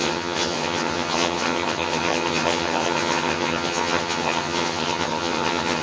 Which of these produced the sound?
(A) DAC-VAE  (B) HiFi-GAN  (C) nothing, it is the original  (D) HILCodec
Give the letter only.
B